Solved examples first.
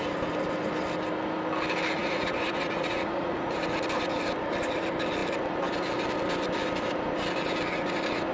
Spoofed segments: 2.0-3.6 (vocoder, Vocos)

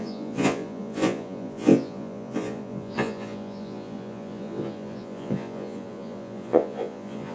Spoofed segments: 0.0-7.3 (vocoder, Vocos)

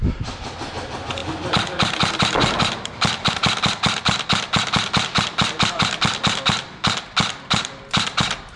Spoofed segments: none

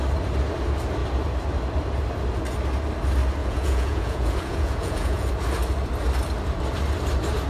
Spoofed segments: 3.4-5.3 (vocoder, Vocos)

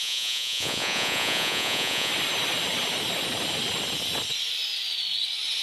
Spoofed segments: 0.0-2.1 (vocoder, Vocos)

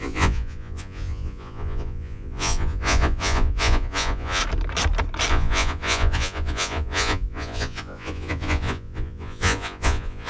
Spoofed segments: 0.0-4.4 (vocoder, Vocos); 5.3-10.3

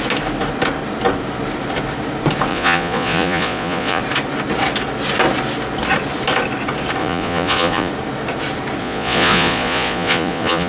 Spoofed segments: 2.5-4.0 (vocoder, Vocos); 7.0-7.9; 8.8-10.7